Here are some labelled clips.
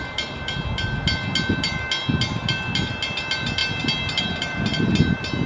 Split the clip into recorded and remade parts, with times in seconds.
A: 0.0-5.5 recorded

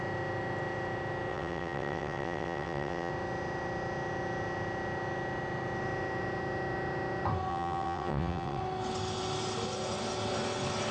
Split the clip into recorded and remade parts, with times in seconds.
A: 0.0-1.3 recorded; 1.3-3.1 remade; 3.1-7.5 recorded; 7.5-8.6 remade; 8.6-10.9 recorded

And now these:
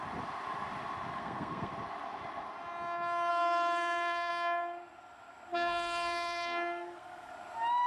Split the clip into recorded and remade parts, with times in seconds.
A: 0.0-1.1 recorded; 1.1-1.7 remade; 1.7-3.3 recorded; 3.3-4.3 remade; 4.3-5.5 recorded; 5.5-7.3 remade; 7.3-7.9 recorded

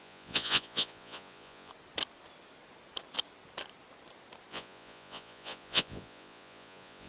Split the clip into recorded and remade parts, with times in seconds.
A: 0.0-1.7 remade; 1.7-4.5 recorded; 4.5-7.1 remade

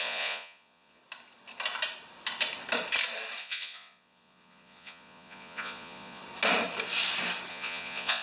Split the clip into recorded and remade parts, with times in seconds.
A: 0.0-1.0 remade; 1.0-3.4 recorded; 3.4-6.2 remade; 6.2-7.5 recorded; 7.5-8.2 remade